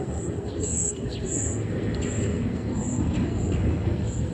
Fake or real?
fake